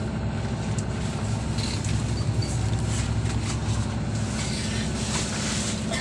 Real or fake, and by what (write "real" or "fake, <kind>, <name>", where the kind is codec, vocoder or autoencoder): real